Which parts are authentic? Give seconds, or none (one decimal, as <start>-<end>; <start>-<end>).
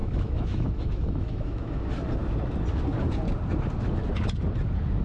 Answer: 1.8-5.0